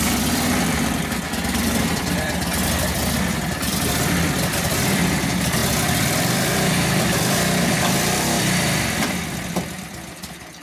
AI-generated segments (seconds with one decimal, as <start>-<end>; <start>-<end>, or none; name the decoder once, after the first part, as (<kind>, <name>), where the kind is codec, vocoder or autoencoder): 0.0-10.6 (vocoder, BigVGAN v2)